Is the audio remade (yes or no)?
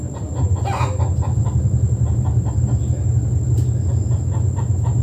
no